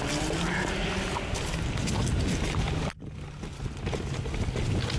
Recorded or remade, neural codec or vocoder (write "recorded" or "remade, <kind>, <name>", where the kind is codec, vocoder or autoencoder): recorded